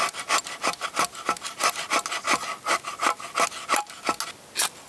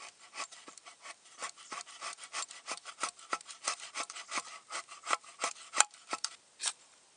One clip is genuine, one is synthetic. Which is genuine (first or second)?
first